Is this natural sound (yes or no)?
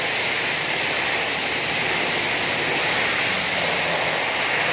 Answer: yes